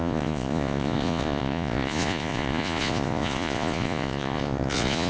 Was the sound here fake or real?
fake